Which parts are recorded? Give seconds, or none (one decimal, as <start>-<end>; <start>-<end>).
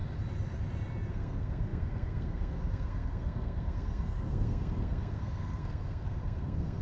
0.0-1.1